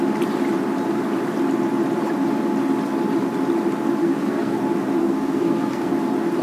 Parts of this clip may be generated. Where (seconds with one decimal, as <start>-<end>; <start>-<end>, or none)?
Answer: 4.0-4.6; 5.0-5.9